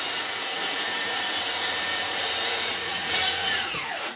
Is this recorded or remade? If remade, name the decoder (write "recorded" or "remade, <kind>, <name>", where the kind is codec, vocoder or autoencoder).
remade, vocoder, Vocos